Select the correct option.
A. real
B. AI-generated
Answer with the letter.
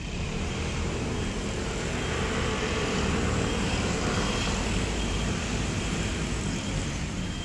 B